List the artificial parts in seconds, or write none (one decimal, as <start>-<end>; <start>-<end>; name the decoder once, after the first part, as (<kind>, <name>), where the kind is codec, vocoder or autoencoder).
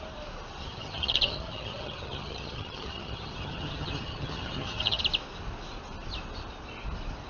0.6-5.0 (vocoder, HiFi-GAN)